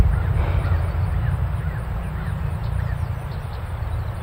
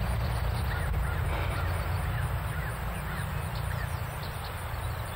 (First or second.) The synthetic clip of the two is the first